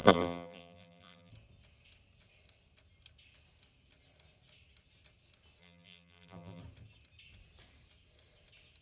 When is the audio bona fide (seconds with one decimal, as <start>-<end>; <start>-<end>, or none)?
1.3-5.6; 6.6-8.8